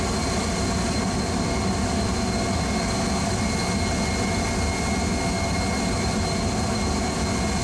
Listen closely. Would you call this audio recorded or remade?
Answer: recorded